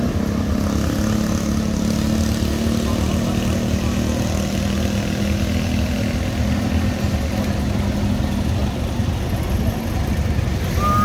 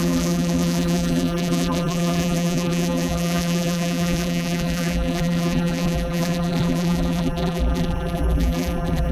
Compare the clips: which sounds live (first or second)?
first